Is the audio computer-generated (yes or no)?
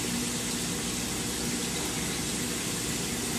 no